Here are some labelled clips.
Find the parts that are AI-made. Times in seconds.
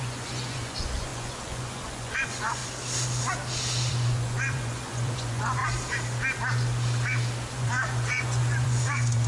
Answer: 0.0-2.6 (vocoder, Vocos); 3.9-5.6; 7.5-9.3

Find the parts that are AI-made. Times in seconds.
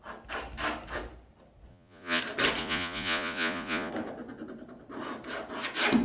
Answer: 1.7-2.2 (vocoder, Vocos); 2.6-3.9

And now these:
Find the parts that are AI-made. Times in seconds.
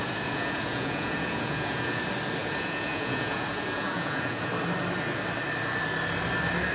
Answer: 0.0-2.0 (vocoder, Vocos); 2.4-4.5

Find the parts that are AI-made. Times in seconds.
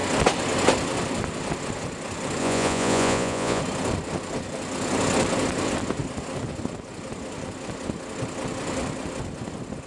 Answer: 2.4-3.6 (vocoder, Vocos)